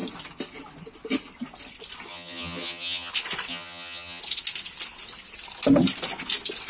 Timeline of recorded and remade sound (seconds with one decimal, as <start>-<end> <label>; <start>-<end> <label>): 0.0-2.1 recorded; 2.1-3.1 remade; 3.1-3.5 recorded; 3.5-4.2 remade; 4.2-6.7 recorded